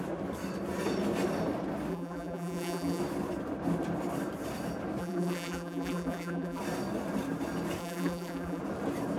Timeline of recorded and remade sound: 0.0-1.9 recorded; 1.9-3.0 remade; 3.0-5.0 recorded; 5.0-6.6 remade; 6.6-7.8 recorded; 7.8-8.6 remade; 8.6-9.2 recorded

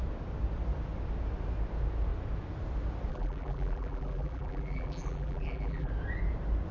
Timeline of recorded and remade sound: 0.0-3.1 recorded; 3.1-5.9 remade; 5.9-6.7 recorded

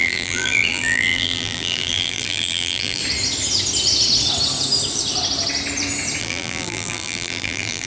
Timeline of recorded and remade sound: 0.0-3.0 remade; 3.0-6.2 recorded; 6.2-7.9 remade

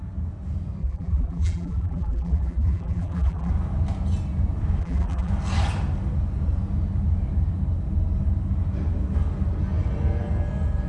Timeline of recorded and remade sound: 0.0-0.8 recorded; 0.8-3.5 remade; 3.5-4.8 recorded; 4.8-5.3 remade; 5.3-10.9 recorded

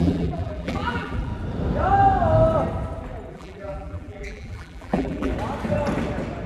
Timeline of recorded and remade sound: 0.0-1.3 remade; 1.3-3.3 recorded; 3.3-5.3 remade; 5.3-6.5 recorded

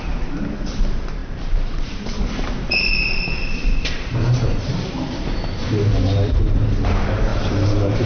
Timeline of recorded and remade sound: 0.0-8.1 remade

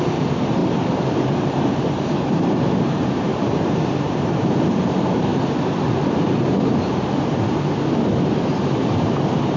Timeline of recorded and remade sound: 0.0-5.3 remade; 5.3-8.6 recorded; 8.6-9.6 remade

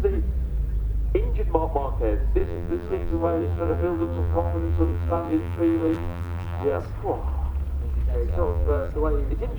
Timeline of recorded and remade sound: 0.0-2.4 recorded; 2.4-6.8 remade; 6.8-8.3 recorded; 8.3-8.9 remade; 8.9-9.6 recorded